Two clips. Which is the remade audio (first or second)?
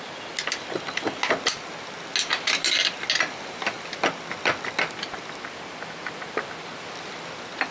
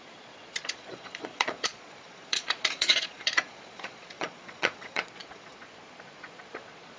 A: second